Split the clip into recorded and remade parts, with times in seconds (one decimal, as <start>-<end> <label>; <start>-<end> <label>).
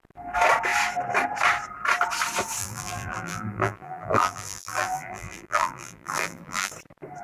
0.0-2.6 recorded; 2.6-6.7 remade; 6.7-7.2 recorded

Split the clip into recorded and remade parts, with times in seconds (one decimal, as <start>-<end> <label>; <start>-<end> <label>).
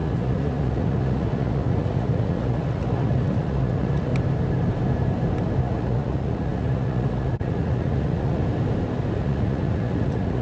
0.0-4.1 remade; 4.1-5.6 recorded; 5.6-8.4 remade; 8.4-9.1 recorded; 9.1-10.4 remade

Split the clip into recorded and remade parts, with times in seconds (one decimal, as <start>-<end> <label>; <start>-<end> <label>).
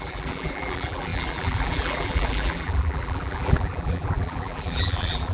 0.0-5.3 remade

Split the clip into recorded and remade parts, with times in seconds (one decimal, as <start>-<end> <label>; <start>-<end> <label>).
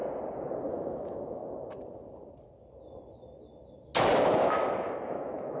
0.0-0.7 recorded; 0.7-1.4 remade; 1.4-4.8 recorded; 4.8-5.6 remade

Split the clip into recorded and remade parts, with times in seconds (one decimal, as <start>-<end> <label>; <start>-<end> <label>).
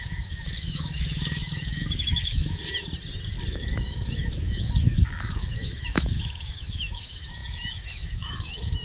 0.0-2.6 remade; 2.6-3.5 recorded; 3.5-8.8 remade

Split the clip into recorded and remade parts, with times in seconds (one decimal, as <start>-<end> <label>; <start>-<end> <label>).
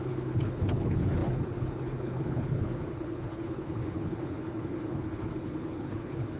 0.0-6.4 remade